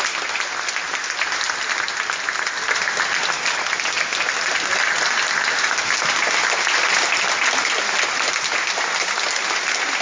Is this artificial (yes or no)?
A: no